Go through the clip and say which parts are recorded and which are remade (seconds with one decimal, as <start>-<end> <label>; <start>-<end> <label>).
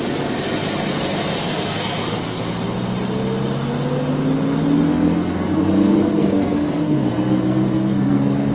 0.0-1.4 recorded; 1.4-2.4 remade; 2.4-4.9 recorded; 4.9-8.5 remade